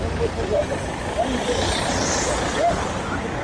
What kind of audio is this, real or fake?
fake